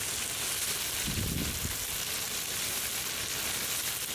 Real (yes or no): yes